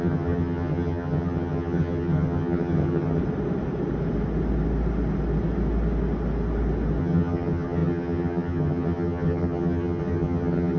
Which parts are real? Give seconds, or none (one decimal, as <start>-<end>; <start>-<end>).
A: 3.2-7.0